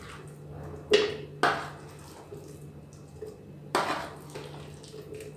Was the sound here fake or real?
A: real